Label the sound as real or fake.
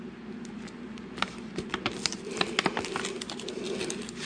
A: fake